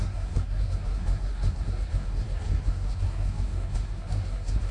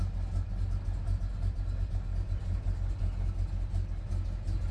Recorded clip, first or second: second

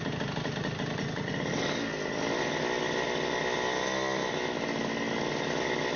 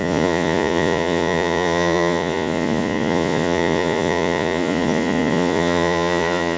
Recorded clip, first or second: first